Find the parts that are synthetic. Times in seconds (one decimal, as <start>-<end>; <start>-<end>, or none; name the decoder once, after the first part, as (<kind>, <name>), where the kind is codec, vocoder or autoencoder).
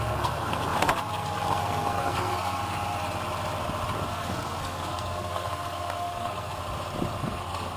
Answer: 0.0-2.6 (codec, SNAC); 4.1-6.6; 7.2-7.8